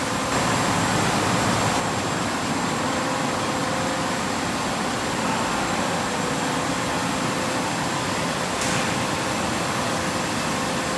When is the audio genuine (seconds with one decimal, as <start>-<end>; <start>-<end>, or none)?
0.0-11.0

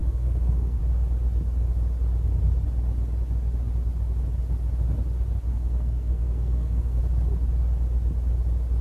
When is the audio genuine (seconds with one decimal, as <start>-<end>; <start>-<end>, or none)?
0.8-5.5; 7.0-8.8

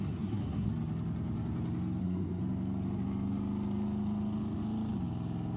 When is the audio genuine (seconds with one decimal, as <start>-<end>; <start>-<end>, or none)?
0.7-2.0; 2.4-5.6

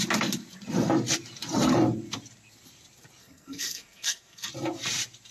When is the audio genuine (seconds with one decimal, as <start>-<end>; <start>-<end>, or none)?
0.0-3.2; 4.5-5.3